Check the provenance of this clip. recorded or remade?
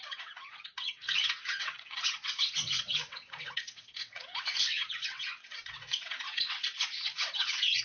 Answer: remade